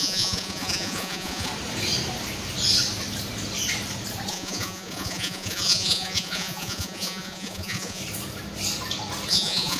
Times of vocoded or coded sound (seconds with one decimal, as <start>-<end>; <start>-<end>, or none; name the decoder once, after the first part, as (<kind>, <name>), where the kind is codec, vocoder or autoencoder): 0.0-1.5 (vocoder, Vocos); 4.3-8.0; 9.3-9.8